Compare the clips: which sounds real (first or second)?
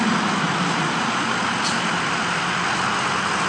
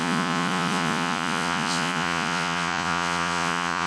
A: first